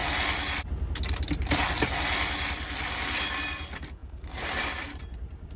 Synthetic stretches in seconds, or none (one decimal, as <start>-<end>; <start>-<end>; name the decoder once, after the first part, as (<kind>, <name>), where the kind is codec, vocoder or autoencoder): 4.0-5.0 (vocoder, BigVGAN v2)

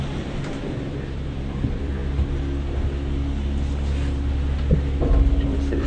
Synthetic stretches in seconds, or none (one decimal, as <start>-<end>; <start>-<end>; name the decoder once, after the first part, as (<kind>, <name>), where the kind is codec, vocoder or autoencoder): 0.0-2.0 (vocoder, BigVGAN v2); 5.5-5.9

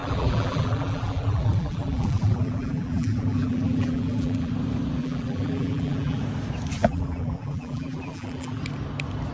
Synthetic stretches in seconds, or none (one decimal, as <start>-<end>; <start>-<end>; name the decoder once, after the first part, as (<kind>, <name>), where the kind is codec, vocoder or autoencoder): 0.0-4.5 (vocoder, BigVGAN v2); 5.0-6.2; 6.8-8.6